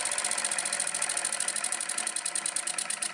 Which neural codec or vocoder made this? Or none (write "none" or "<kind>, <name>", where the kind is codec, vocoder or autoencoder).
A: vocoder, BigVGAN v2